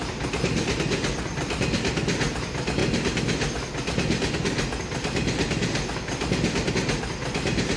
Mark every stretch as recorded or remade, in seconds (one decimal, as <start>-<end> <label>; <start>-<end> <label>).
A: 0.0-7.8 recorded